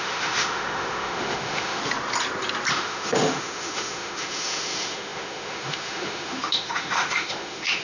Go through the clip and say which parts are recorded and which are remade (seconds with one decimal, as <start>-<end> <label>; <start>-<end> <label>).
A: 0.0-1.8 remade; 1.8-2.7 recorded; 2.7-7.8 remade